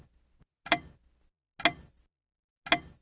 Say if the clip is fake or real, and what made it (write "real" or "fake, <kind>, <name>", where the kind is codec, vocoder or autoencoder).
real